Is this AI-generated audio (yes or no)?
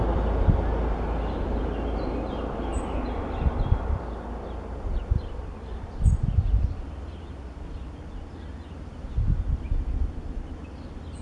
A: no